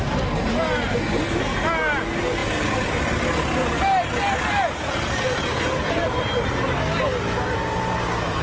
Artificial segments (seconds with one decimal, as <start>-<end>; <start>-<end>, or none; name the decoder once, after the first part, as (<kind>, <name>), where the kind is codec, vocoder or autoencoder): none

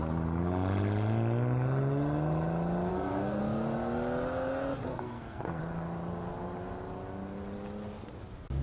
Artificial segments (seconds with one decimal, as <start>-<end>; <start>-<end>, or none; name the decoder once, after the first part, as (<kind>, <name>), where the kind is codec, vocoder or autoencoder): 2.9-3.4 (codec, SNAC); 4.9-5.6

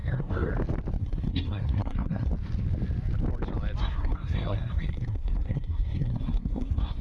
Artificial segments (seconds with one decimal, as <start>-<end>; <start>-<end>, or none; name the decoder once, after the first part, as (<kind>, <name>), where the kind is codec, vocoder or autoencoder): 0.0-0.5 (codec, SNAC); 1.0-2.3; 3.8-7.0

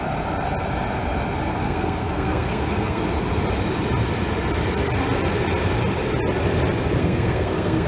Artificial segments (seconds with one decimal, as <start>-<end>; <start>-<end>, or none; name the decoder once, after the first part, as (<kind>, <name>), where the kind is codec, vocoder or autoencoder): 1.6-3.0 (codec, SNAC); 7.0-7.9

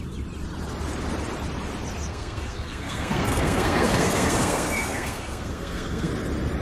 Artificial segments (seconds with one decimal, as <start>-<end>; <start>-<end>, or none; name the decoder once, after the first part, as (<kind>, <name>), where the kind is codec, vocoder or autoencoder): 2.1-6.1 (codec, SNAC)

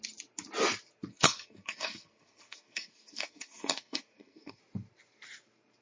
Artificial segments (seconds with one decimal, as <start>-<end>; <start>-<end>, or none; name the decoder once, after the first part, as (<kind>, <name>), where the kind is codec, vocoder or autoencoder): 1.1-4.6 (codec, SNAC)

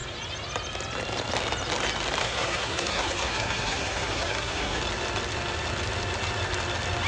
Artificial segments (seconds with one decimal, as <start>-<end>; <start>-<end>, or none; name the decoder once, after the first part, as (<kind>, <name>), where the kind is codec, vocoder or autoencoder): 2.2-4.8 (codec, SNAC)

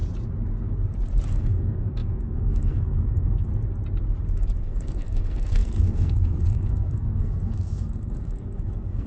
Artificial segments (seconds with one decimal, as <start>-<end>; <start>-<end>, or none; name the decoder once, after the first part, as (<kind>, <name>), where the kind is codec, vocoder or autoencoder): 1.3-3.5 (codec, SNAC); 4.6-9.1